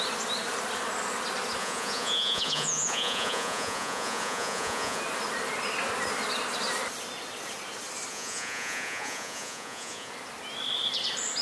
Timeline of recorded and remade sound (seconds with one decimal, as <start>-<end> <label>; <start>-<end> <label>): 0.0-1.6 recorded; 1.6-5.0 remade; 5.0-8.1 recorded; 8.1-10.1 remade; 10.1-11.4 recorded